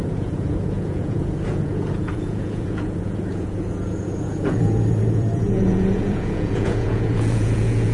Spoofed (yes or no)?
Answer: yes